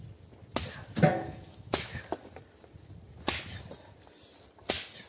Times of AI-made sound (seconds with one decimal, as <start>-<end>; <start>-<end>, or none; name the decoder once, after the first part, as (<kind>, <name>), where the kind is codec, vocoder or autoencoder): 1.1-2.0 (autoencoder, DAC-VAE)